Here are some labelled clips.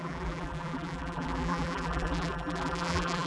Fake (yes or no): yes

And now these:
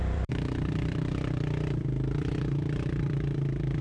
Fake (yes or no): yes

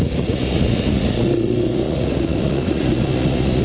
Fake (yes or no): yes